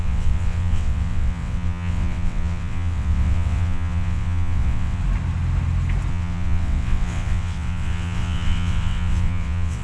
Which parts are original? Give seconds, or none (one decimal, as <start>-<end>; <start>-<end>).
5.0-6.1